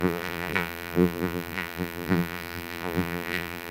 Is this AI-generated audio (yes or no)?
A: yes